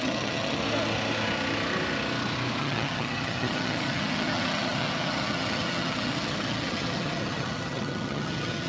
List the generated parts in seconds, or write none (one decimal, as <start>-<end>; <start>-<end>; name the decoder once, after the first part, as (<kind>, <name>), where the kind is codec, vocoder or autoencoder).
0.0-0.6 (vocoder, HiFi-GAN); 2.6-8.7